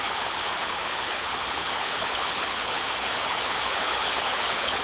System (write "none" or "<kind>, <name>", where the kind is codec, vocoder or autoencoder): codec, HILCodec